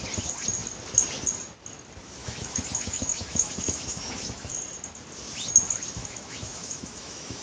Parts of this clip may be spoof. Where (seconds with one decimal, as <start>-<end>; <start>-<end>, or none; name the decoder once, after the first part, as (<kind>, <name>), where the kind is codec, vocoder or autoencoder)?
2.2-4.5 (autoencoder, DAC-VAE); 6.0-7.4